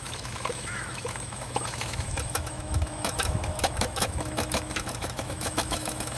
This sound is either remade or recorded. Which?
remade